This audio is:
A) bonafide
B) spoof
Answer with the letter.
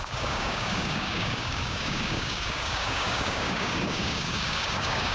B